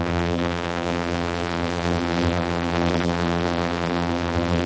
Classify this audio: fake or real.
fake